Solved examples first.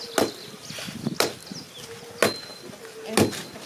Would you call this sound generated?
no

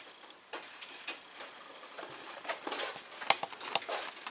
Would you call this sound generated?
no